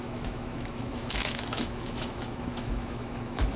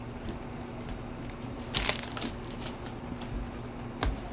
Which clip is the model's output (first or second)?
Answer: first